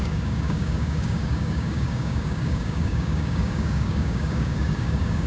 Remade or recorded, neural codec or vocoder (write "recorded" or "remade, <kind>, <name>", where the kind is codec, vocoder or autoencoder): remade, codec, DAC